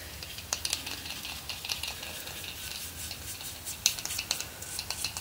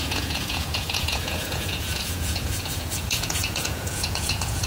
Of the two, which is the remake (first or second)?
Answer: second